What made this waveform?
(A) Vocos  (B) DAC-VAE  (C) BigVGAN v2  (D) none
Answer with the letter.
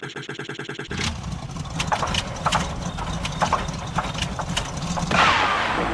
D